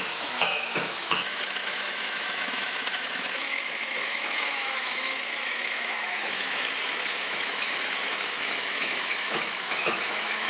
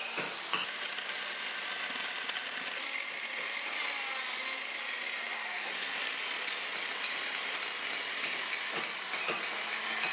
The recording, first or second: second